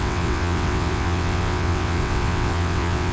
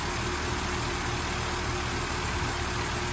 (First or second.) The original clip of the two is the second